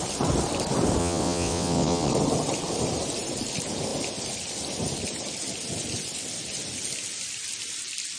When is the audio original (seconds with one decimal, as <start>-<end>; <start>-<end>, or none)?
0.0-1.0; 2.1-8.2